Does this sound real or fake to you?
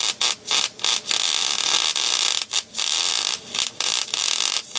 fake